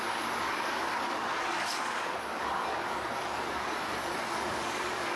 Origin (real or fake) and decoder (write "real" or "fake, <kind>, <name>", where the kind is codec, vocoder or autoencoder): fake, codec, DAC